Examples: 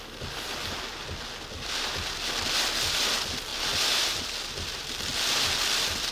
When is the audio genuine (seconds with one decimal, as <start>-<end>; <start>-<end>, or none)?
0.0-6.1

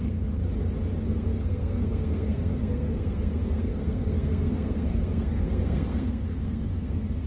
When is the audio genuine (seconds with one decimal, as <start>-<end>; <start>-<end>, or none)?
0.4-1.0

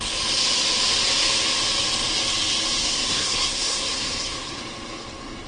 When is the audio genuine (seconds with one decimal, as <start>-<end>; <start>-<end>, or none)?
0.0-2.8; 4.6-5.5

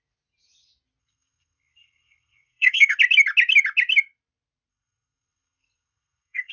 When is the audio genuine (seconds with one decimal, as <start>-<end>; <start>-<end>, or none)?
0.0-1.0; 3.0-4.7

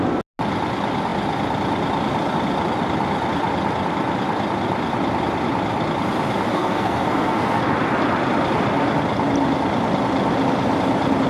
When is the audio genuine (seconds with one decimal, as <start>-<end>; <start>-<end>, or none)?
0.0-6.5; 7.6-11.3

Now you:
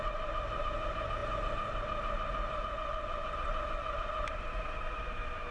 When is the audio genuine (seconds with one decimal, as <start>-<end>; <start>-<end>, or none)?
0.0-5.5